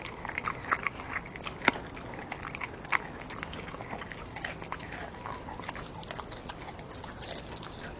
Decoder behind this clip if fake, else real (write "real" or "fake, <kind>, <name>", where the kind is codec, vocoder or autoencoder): real